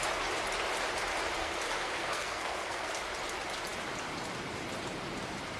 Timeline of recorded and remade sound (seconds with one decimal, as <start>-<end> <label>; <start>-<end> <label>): 0.0-1.4 recorded; 1.4-2.9 remade; 2.9-5.6 recorded